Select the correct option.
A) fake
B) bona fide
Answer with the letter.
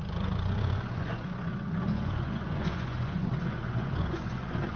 A